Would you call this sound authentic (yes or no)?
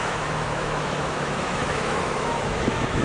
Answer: no